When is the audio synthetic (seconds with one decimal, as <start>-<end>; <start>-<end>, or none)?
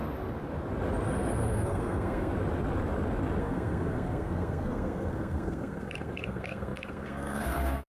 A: 1.5-2.3; 3.4-7.9